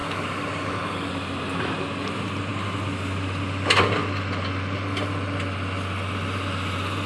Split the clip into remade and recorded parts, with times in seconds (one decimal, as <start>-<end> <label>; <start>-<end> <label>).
0.0-1.1 remade; 1.1-7.1 recorded